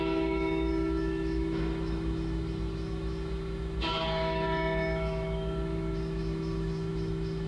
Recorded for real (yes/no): no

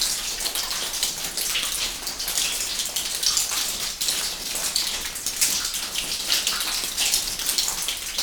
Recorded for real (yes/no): yes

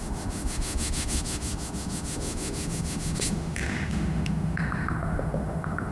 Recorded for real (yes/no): no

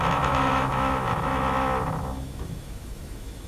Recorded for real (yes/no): no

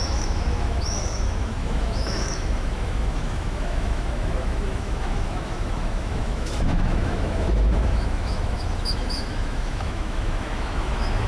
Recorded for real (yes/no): no